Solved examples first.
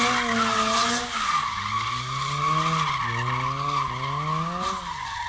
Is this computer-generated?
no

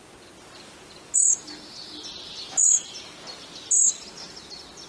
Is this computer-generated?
no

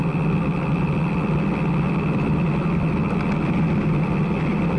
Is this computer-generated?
no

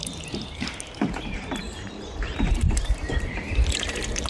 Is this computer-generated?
yes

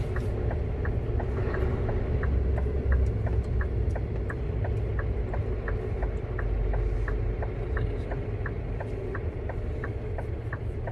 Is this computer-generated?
no